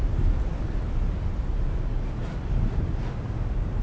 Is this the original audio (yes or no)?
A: yes